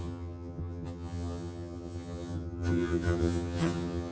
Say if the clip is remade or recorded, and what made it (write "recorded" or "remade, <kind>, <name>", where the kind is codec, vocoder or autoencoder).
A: remade, vocoder, HiFi-GAN